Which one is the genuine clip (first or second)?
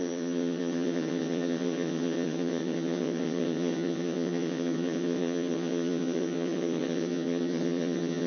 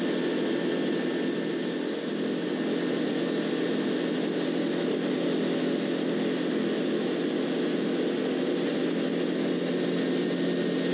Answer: second